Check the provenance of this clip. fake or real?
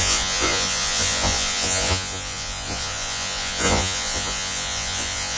fake